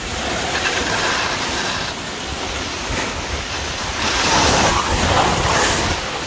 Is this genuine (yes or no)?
yes